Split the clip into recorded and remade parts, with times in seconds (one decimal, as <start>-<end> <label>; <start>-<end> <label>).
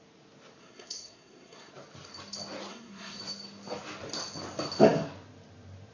0.0-0.6 recorded; 0.6-1.7 remade; 1.7-2.7 recorded; 2.7-3.2 remade; 3.2-5.9 recorded